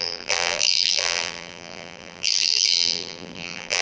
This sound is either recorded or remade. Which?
remade